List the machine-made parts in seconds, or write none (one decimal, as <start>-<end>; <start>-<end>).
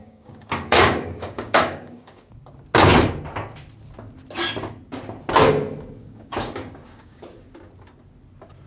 0.0-2.3; 6.0-7.2